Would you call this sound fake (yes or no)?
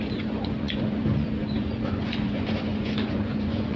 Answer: yes